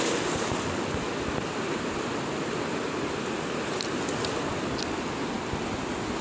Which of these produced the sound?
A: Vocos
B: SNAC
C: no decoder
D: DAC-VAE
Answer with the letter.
C